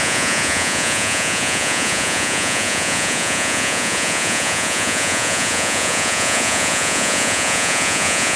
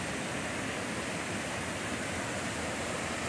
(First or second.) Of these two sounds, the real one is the second